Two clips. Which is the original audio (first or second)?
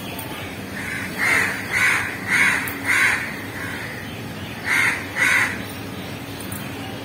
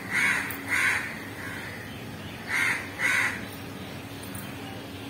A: second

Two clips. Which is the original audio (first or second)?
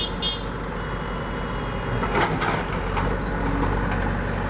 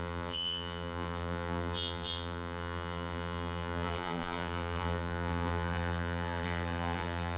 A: first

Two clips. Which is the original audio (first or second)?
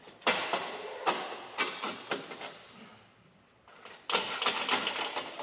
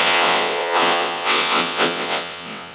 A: first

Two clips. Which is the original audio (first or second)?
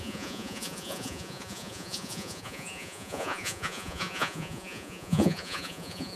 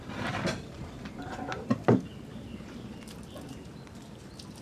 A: second